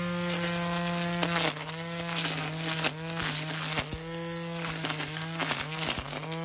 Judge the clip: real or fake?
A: real